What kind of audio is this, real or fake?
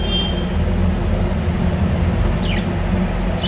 real